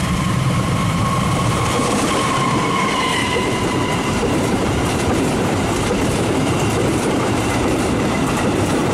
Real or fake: fake